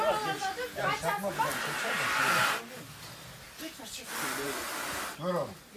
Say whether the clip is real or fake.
real